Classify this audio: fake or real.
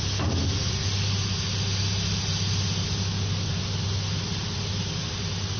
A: real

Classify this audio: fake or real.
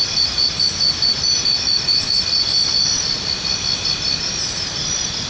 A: real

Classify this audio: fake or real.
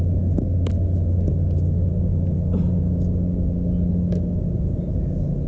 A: real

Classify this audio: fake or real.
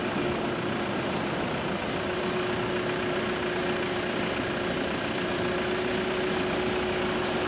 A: real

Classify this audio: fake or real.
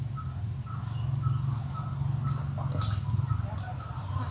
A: real